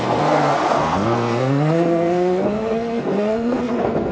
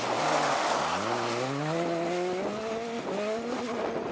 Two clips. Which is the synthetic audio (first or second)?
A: first